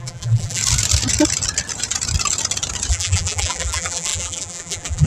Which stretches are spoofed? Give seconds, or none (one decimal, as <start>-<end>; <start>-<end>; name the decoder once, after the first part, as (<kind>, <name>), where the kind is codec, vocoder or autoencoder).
0.0-0.6 (vocoder, BigVGAN v2); 2.9-5.1